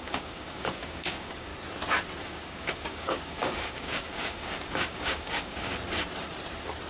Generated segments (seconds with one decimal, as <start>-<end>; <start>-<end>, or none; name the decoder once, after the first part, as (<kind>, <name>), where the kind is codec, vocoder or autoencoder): 0.0-1.5 (codec, DAC); 2.2-5.7